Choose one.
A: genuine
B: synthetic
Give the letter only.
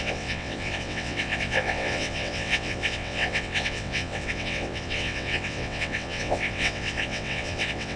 B